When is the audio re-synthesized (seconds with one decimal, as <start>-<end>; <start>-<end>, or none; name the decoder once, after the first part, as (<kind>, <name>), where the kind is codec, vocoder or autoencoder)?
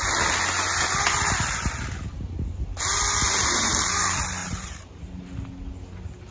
4.4-5.0 (vocoder, BigVGAN v2)